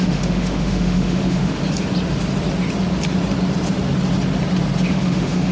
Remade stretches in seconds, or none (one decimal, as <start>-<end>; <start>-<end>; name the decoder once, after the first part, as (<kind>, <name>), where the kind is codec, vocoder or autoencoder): 0.0-1.6 (autoencoder, DAC-VAE); 4.9-5.5